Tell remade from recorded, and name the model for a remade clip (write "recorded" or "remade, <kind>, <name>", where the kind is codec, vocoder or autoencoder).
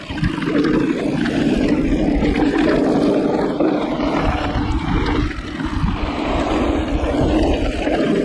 recorded